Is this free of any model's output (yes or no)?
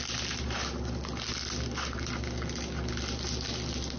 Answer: yes